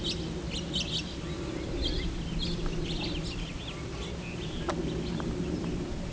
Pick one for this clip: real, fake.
real